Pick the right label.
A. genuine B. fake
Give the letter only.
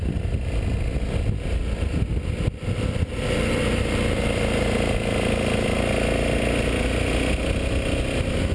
A